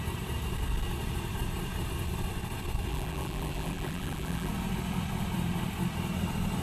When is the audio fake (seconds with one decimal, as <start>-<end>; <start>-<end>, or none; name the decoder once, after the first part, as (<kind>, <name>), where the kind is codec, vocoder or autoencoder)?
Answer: 2.9-4.5 (vocoder, BigVGAN v2)